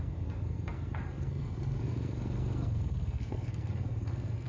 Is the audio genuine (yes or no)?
no